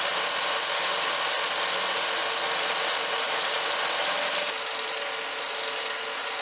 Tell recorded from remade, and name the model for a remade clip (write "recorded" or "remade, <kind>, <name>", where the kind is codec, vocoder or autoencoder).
recorded